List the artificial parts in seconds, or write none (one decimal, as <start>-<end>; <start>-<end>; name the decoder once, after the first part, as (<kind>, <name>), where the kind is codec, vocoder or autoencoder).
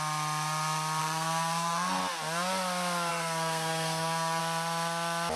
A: 1.0-2.0 (codec, SNAC); 3.1-4.4